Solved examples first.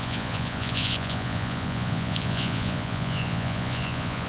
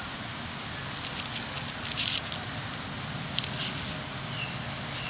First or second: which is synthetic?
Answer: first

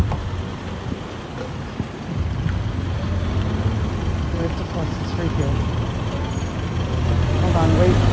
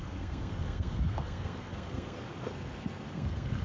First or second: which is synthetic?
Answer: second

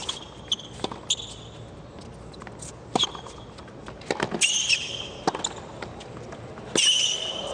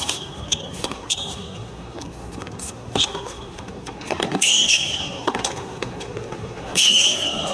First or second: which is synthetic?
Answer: second